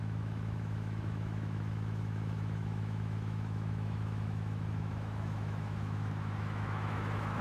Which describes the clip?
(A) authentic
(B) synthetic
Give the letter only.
B